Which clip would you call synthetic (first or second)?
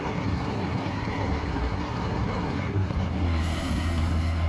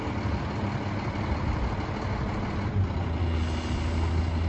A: first